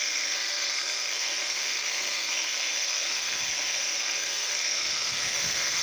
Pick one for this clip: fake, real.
fake